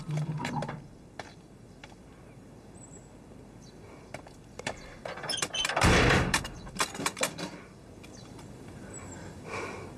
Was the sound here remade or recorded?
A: recorded